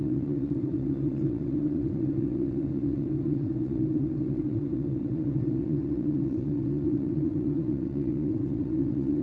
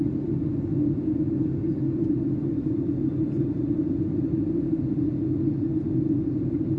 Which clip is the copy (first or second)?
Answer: first